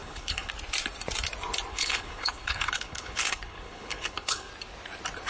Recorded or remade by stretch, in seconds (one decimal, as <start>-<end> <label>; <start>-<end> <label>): 0.0-0.5 remade; 0.5-1.7 recorded; 1.7-4.5 remade; 4.5-5.3 recorded